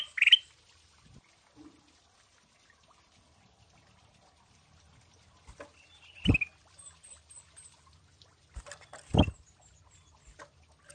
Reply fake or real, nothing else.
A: real